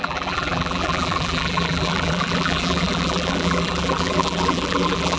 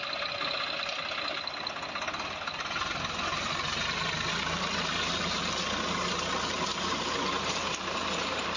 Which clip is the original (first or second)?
second